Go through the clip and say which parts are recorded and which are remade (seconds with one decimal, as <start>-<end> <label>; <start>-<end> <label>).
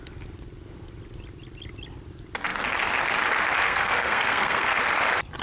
0.0-3.6 recorded; 3.6-4.8 remade; 4.8-5.4 recorded